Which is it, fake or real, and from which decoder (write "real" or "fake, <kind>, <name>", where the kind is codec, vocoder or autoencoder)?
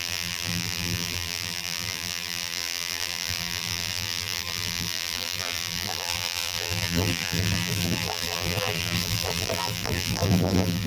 fake, vocoder, BigVGAN v2